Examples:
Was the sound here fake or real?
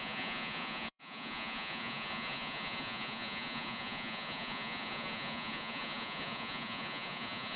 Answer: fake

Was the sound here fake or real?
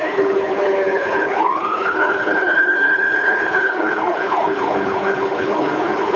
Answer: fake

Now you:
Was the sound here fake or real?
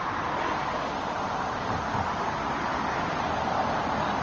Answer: real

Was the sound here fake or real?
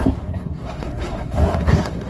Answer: fake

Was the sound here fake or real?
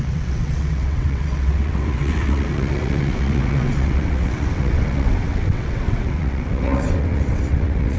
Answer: fake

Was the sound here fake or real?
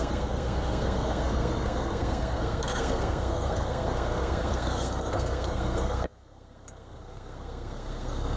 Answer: fake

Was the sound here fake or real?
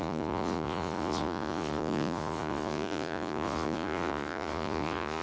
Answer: fake